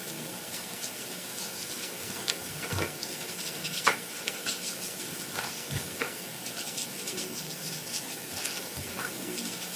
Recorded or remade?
remade